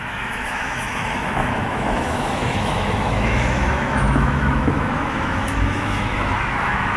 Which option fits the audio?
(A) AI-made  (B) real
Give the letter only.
A